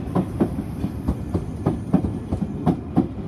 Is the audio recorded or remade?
remade